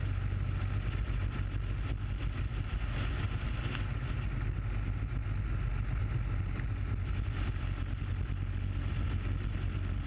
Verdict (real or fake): real